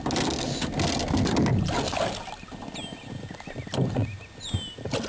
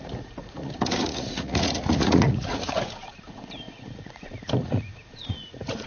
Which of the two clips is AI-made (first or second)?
second